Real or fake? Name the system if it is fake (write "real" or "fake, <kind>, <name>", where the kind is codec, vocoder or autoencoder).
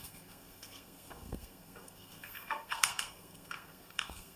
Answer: fake, codec, SNAC